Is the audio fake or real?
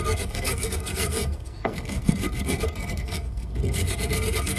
fake